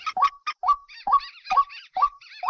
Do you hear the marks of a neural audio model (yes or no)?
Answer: yes